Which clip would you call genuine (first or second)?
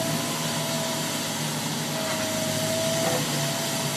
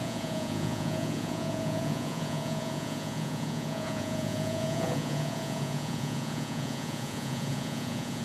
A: first